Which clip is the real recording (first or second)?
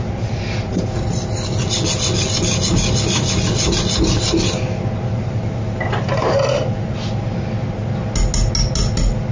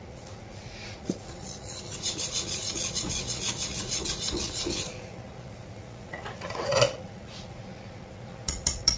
first